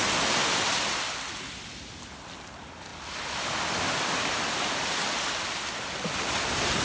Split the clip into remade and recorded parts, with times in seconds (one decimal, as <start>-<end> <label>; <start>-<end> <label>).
0.0-6.8 recorded

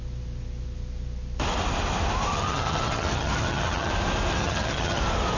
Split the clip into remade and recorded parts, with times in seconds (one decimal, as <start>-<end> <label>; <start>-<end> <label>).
0.0-2.3 recorded; 2.3-3.9 remade; 3.9-4.3 recorded; 4.3-5.0 remade; 5.0-5.4 recorded

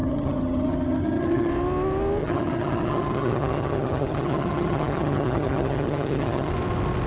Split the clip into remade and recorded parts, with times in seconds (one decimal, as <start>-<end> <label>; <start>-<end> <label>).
0.0-1.5 remade; 1.5-2.2 recorded; 2.2-6.5 remade; 6.5-7.1 recorded

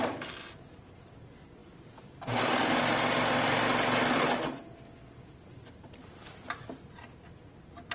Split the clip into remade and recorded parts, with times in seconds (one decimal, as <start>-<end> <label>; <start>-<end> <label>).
0.0-7.9 recorded

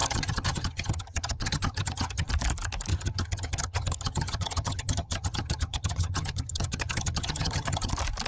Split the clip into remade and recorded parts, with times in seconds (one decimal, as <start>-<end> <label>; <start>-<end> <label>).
0.0-2.3 remade; 2.3-2.9 recorded; 2.9-7.9 remade; 7.9-8.3 recorded

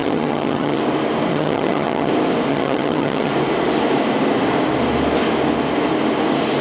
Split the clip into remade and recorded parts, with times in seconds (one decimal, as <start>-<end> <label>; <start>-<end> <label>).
0.0-0.8 remade; 0.8-1.3 recorded; 1.3-2.1 remade; 2.1-2.5 recorded; 2.5-3.3 remade; 3.3-6.6 recorded

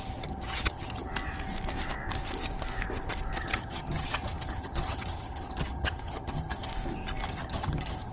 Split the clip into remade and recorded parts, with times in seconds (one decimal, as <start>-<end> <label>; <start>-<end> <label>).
0.0-1.1 remade; 1.1-3.4 recorded; 3.4-6.7 remade; 6.7-7.3 recorded; 7.3-8.1 remade

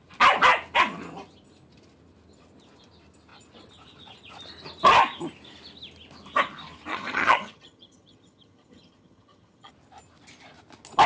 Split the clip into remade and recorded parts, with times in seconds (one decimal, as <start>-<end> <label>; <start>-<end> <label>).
0.0-6.9 recorded; 6.9-9.7 remade; 9.7-11.1 recorded